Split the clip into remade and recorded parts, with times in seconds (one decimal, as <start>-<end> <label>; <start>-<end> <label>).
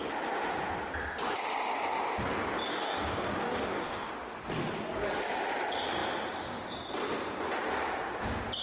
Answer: 0.0-2.7 recorded; 2.7-4.1 remade; 4.1-8.6 recorded